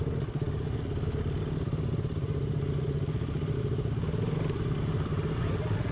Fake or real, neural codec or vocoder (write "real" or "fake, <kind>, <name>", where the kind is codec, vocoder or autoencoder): real